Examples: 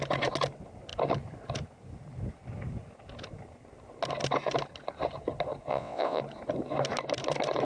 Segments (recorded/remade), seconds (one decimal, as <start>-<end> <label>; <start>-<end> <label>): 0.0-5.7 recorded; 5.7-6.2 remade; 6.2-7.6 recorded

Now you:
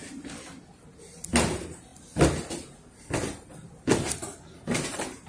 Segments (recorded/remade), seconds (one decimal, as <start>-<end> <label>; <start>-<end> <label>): 0.0-5.3 recorded

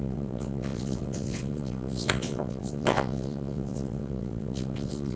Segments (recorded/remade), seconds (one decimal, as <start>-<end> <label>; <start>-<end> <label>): 0.0-5.2 remade

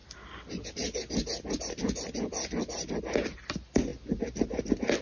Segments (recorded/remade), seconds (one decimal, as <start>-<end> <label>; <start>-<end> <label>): 0.0-5.0 recorded

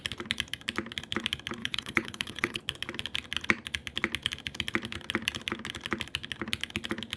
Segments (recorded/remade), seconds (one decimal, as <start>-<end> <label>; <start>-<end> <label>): 0.0-1.6 recorded; 1.6-2.6 remade; 2.6-7.2 recorded

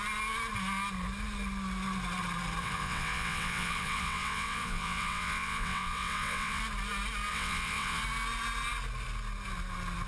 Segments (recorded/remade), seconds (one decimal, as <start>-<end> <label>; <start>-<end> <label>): 0.0-2.6 recorded; 2.6-6.6 remade; 6.6-7.3 recorded; 7.3-8.0 remade; 8.0-10.1 recorded